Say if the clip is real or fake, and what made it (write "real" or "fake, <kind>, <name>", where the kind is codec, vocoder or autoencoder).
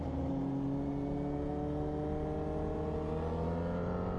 real